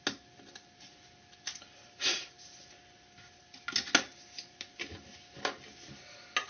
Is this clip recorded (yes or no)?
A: yes